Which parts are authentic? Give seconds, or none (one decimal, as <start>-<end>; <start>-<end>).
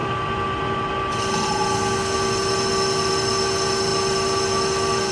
0.0-5.1